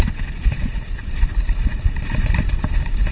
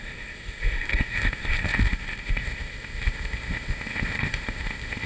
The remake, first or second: second